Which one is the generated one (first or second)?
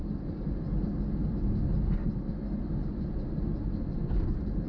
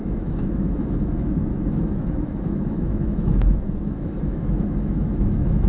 second